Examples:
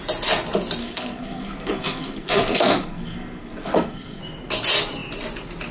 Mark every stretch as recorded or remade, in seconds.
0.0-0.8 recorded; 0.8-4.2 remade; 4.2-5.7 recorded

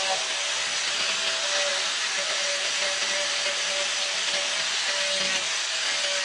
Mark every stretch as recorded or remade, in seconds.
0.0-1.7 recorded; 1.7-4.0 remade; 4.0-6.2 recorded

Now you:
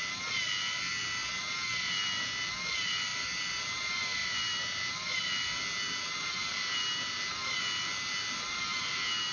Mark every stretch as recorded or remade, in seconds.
0.0-9.3 recorded

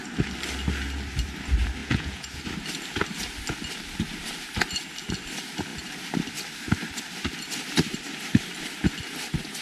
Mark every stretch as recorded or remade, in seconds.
0.0-1.8 recorded; 1.8-2.4 remade; 2.4-9.6 recorded

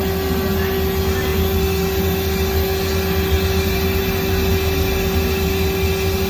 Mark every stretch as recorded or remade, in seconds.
0.0-6.3 recorded